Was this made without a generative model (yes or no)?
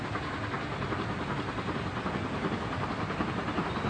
yes